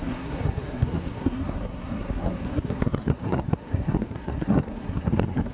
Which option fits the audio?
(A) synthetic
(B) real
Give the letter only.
A